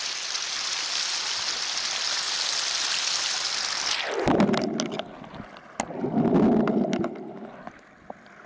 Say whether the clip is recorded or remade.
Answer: recorded